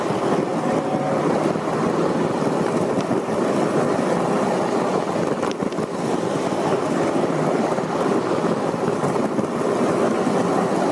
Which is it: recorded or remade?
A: recorded